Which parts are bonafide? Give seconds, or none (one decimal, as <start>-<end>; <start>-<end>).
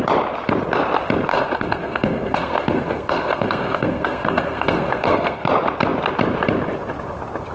0.0-1.3; 5.5-7.5